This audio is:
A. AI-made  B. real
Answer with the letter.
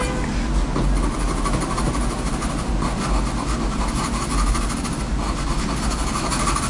B